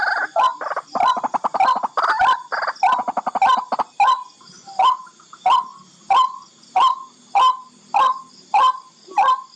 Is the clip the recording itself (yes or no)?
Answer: yes